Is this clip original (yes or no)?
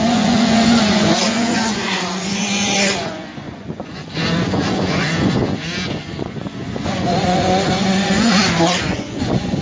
no